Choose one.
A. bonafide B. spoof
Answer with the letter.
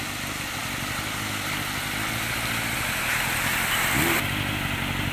A